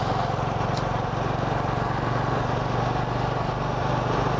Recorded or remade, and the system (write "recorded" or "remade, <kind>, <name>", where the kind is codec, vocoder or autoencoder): recorded